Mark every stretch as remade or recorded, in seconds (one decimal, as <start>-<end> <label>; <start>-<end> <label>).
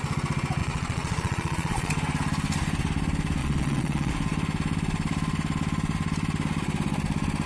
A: 0.0-0.6 recorded; 0.6-1.9 remade; 1.9-3.4 recorded; 3.4-4.1 remade; 4.1-7.5 recorded